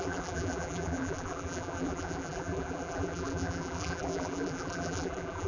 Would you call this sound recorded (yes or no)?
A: no